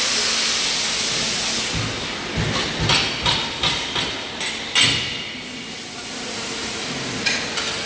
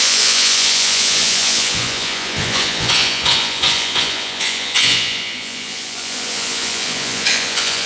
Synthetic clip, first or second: second